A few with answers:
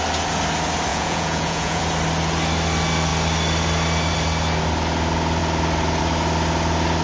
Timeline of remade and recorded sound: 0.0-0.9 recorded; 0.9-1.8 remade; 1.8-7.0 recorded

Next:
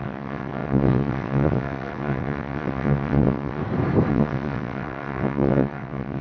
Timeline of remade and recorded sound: 0.0-3.6 remade; 3.6-4.1 recorded; 4.1-6.2 remade